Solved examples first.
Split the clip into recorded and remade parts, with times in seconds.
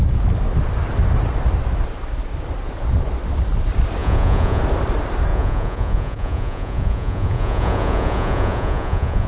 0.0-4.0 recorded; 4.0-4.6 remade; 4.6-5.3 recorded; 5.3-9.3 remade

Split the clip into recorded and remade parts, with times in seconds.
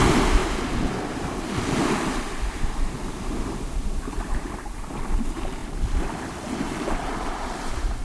0.0-5.6 remade; 5.6-6.4 recorded; 6.4-8.0 remade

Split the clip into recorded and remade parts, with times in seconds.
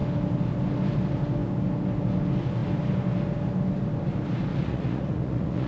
0.0-4.5 recorded; 4.5-5.7 remade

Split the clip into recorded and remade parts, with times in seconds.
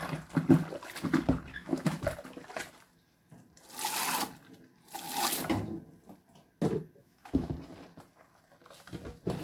0.0-1.5 recorded; 1.5-2.0 remade; 2.0-7.0 recorded; 7.0-7.5 remade; 7.5-9.4 recorded